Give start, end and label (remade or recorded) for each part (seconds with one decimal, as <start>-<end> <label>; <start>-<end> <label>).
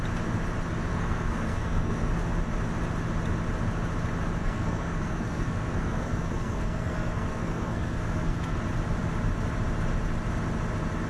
0.0-0.9 recorded; 0.9-2.1 remade; 2.1-4.4 recorded; 4.4-8.6 remade; 8.6-11.1 recorded